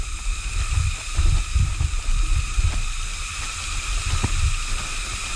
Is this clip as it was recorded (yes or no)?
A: yes